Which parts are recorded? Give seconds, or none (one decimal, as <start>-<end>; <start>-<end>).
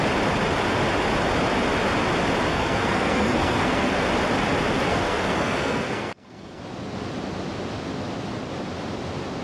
0.0-2.5; 4.1-4.9; 6.6-9.4